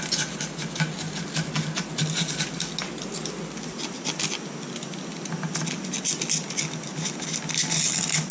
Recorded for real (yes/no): yes